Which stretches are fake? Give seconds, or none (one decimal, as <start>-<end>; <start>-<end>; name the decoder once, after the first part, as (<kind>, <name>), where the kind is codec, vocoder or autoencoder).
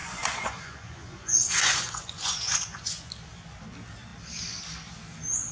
0.0-3.1 (vocoder, Vocos)